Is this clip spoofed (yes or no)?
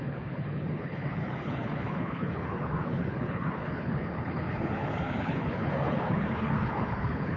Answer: yes